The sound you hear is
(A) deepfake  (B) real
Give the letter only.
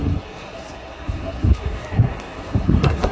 A